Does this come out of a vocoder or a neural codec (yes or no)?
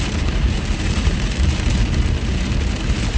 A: yes